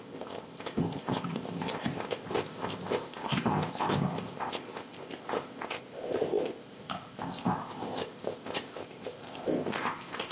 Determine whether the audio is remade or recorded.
remade